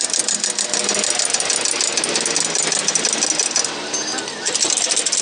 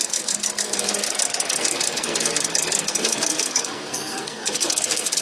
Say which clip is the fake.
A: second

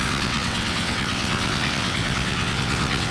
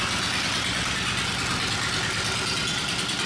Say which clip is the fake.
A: first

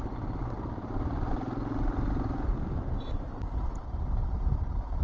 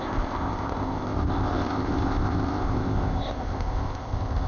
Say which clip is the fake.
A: second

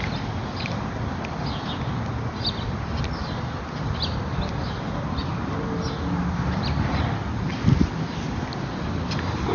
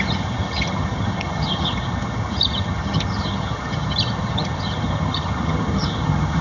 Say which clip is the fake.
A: second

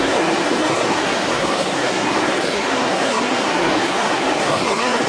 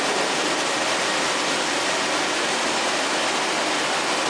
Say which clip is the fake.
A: first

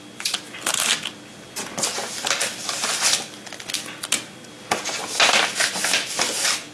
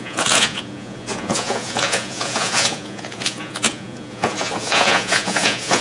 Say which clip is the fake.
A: second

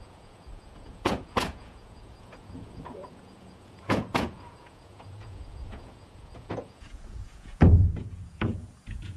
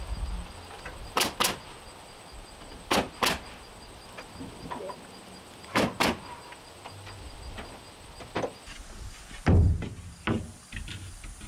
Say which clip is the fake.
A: first